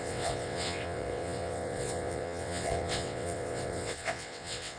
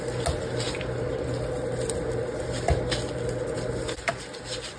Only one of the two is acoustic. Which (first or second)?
second